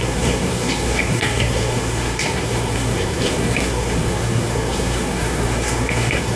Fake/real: fake